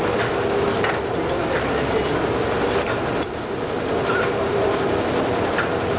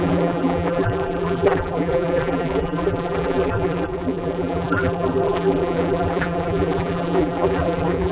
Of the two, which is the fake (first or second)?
second